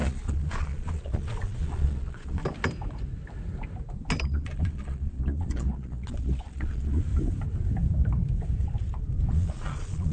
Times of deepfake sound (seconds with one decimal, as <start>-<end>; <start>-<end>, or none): 0.0-2.4; 4.2-7.1; 9.3-10.1